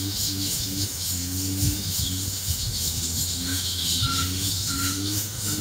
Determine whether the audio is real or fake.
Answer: fake